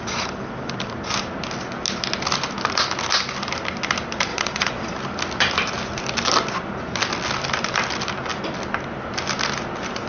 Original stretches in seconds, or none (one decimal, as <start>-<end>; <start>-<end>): 0.0-4.3; 4.9-10.1